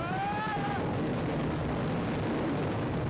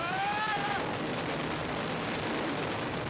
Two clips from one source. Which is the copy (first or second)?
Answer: second